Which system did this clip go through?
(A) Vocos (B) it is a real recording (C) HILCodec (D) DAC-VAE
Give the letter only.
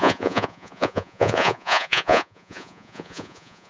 A